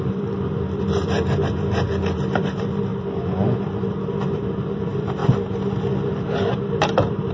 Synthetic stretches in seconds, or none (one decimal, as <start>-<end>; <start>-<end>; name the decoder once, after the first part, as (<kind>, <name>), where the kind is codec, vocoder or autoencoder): 0.0-5.2 (vocoder, BigVGAN v2); 6.0-7.3

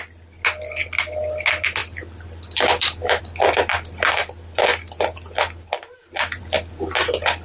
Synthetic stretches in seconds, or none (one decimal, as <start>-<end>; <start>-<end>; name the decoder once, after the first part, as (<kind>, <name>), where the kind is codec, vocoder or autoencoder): 1.8-3.2 (vocoder, BigVGAN v2)